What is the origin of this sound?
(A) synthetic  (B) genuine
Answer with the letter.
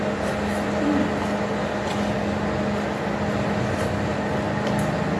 B